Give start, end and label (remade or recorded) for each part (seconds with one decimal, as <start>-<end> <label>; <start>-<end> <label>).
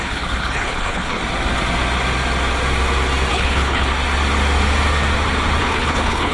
0.0-1.2 remade; 1.2-3.3 recorded; 3.3-3.9 remade; 3.9-5.6 recorded; 5.6-6.3 remade